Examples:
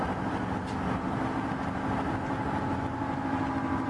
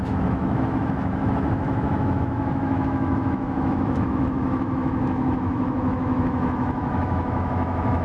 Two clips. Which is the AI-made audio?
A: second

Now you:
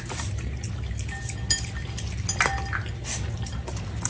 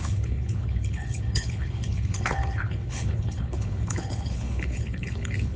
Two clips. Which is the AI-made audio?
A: second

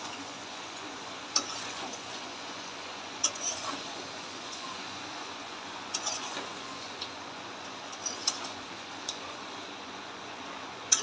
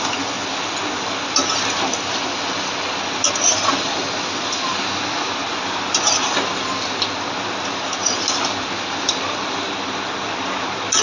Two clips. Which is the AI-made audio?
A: first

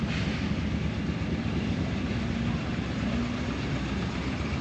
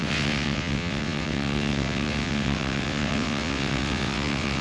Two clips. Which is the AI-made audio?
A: second